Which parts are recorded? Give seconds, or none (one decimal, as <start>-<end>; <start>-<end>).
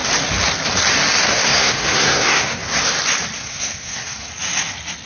0.0-1.3; 2.6-3.4; 4.3-5.1